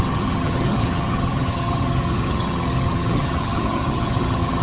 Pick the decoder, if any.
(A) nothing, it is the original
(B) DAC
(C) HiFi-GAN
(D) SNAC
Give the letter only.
C